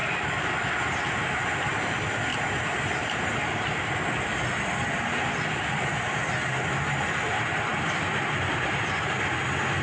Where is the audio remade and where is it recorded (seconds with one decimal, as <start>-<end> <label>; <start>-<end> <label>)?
0.0-9.8 recorded